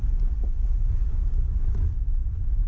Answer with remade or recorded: recorded